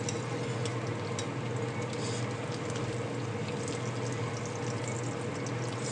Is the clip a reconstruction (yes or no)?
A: no